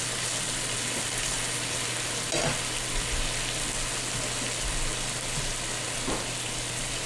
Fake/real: real